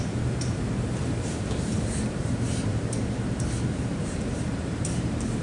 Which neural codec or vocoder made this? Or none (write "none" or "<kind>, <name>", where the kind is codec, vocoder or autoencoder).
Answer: vocoder, BigVGAN v2